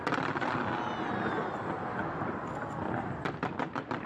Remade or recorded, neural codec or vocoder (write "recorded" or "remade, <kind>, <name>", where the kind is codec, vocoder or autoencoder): recorded